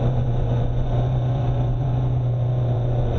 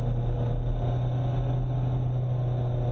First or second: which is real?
second